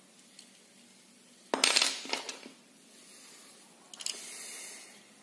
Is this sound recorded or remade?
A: recorded